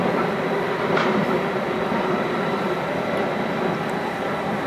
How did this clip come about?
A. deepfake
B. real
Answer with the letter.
A